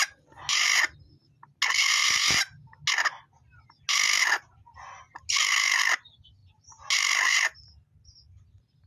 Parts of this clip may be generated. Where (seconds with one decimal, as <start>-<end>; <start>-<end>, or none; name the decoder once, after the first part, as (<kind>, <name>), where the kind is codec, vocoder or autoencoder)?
none